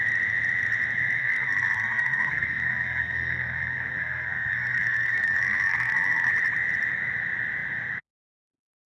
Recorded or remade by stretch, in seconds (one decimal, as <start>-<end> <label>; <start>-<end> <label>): 0.0-1.2 recorded; 1.2-6.3 remade; 6.3-8.9 recorded